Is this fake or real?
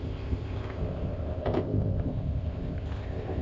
fake